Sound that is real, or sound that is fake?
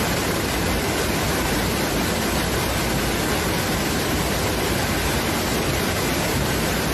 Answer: real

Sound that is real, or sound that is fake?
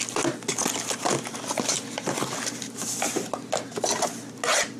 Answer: real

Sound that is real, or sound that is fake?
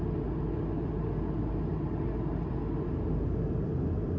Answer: real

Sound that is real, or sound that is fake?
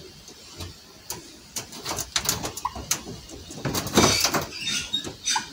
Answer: real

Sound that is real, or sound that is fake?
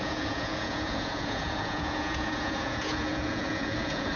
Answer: fake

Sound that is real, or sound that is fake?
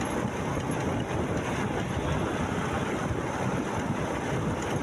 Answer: real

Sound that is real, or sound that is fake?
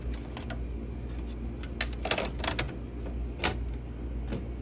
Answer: real